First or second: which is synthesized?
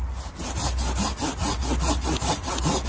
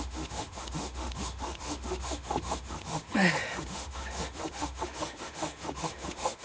second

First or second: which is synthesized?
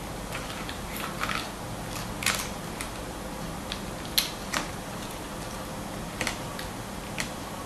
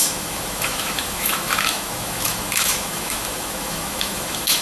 second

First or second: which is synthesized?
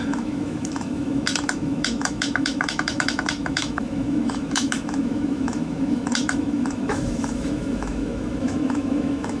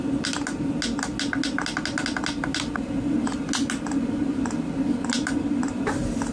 first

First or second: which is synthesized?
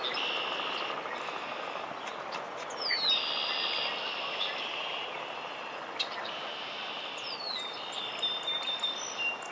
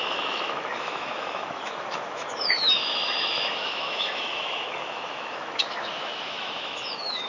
second